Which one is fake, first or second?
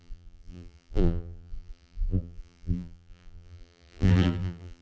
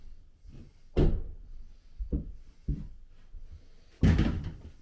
first